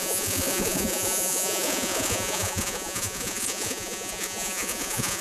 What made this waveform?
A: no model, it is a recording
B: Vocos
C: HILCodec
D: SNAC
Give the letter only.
B